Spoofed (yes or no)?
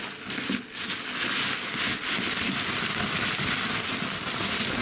no